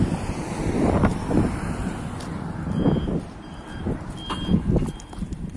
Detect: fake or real real